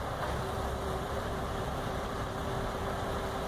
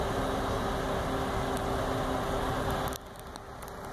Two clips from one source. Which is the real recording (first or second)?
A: second